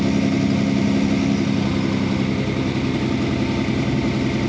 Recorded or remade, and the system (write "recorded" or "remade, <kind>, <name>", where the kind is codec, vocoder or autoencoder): recorded